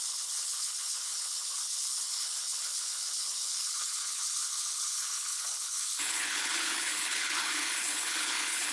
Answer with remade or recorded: remade